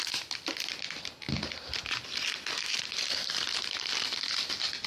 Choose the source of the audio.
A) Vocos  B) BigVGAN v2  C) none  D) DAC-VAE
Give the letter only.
C